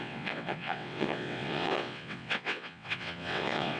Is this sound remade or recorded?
remade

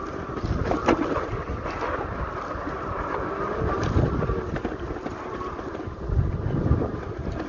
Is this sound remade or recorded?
recorded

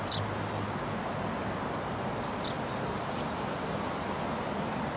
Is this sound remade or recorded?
recorded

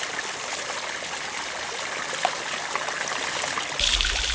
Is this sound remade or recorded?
recorded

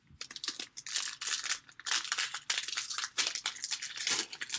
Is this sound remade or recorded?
recorded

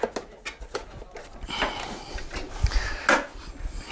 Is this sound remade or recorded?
recorded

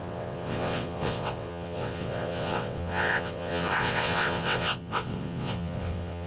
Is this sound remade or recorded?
remade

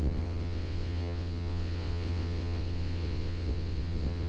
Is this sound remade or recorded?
remade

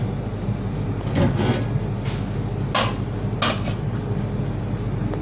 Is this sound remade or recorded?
recorded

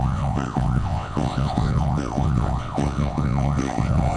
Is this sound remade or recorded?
remade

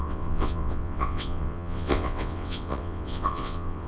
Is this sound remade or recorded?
remade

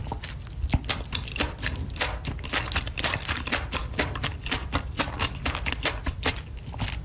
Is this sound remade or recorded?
recorded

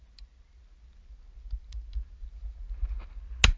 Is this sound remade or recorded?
recorded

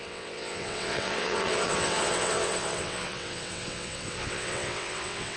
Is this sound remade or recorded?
remade